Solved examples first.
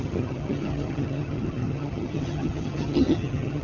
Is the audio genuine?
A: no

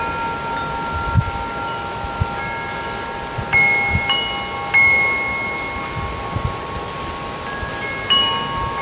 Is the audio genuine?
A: yes